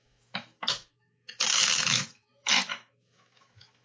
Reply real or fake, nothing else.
fake